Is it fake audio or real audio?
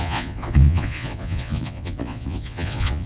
fake